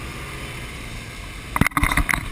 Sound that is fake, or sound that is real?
fake